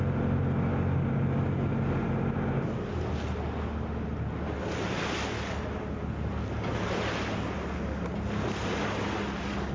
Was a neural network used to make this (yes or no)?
no